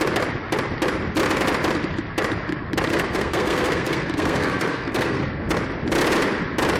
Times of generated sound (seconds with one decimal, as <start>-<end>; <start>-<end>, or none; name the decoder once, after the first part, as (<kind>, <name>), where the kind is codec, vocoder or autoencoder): 2.9-5.4 (codec, SNAC)